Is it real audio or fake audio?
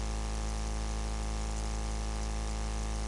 real